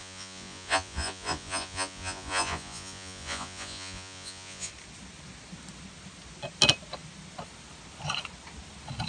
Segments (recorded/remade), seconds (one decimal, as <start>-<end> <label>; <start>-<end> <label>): 0.0-4.7 remade; 4.7-9.1 recorded